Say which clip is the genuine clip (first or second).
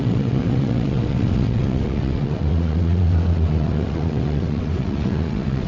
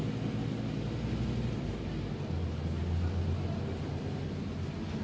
second